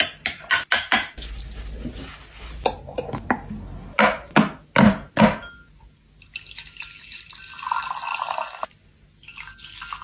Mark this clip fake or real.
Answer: real